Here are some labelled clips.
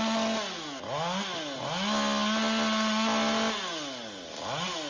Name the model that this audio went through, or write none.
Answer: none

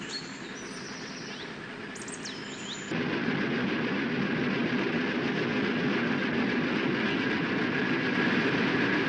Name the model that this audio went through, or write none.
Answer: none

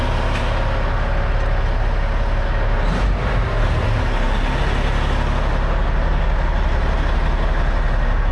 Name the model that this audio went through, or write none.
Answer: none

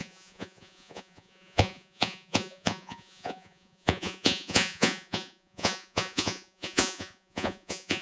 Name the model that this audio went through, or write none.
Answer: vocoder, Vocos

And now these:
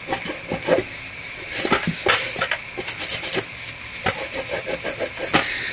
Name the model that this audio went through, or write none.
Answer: none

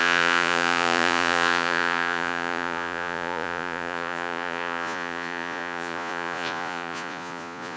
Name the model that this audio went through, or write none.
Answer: vocoder, Vocos